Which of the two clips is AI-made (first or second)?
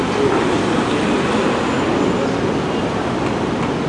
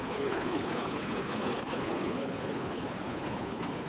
second